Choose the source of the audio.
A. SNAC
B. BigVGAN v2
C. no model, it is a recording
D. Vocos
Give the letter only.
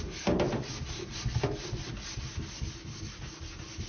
C